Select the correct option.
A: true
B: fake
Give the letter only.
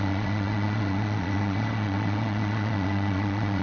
B